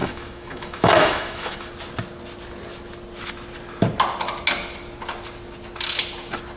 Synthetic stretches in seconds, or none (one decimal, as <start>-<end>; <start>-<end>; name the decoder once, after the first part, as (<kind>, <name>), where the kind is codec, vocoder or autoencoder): 0.0-1.7 (autoencoder, DAC-VAE)